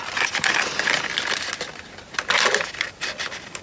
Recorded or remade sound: recorded